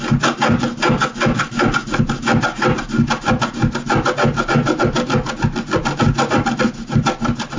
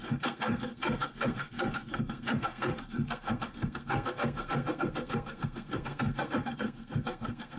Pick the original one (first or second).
first